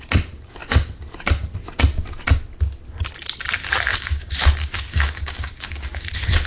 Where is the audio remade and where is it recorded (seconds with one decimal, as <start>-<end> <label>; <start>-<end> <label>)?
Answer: 0.0-3.9 recorded; 3.9-6.0 remade; 6.0-6.5 recorded